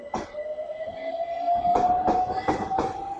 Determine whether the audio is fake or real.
fake